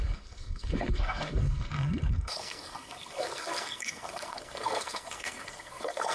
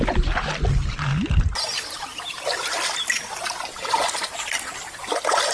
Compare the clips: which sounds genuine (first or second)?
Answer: second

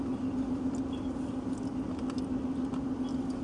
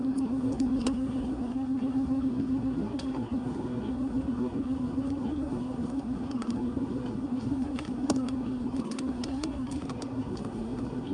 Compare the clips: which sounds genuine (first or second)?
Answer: first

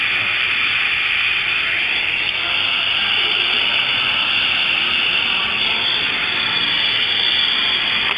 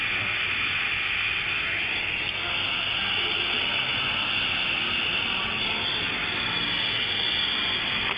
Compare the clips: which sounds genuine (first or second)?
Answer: second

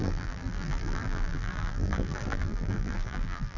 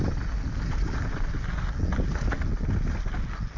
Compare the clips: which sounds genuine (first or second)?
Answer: second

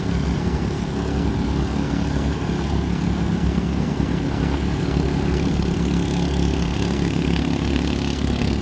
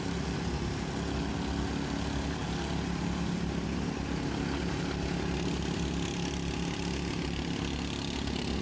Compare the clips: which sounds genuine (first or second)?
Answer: second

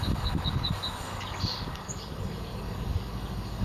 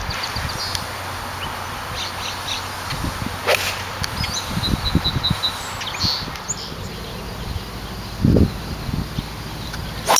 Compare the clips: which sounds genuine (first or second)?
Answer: second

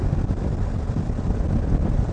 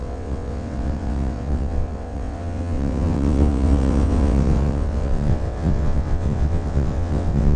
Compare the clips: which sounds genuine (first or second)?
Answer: first